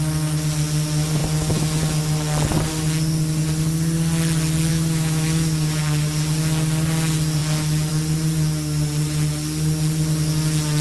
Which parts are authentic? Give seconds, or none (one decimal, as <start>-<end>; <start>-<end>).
0.0-4.7; 5.8-10.8